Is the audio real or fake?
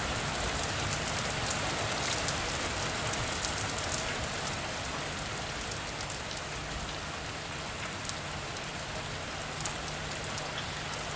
real